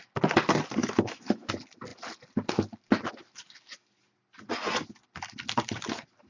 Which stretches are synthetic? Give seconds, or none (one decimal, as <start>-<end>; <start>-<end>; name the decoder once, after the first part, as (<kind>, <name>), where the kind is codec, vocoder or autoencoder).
0.8-1.5 (autoencoder, DAC-VAE)